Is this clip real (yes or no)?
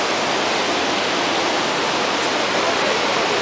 yes